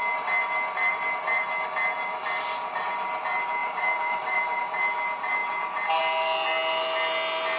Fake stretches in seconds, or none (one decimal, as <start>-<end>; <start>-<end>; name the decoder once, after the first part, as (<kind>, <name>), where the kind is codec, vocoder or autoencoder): 0.9-1.5 (vocoder, BigVGAN v2); 3.6-4.6